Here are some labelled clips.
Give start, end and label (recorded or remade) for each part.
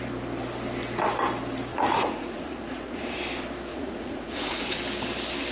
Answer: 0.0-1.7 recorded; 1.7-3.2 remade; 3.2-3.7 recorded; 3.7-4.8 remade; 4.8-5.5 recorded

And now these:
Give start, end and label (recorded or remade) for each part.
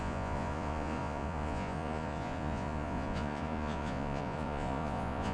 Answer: 0.0-5.3 remade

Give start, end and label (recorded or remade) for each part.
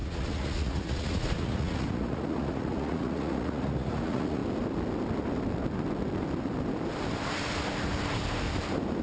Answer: 0.0-4.4 remade; 4.4-9.0 recorded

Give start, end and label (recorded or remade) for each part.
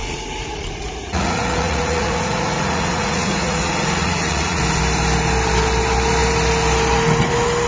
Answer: 0.0-4.6 remade; 4.6-7.7 recorded